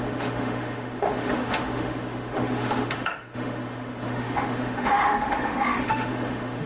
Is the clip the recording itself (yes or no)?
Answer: no